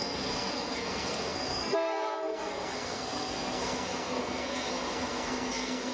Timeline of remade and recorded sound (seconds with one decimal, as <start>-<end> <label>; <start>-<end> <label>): 0.0-5.9 remade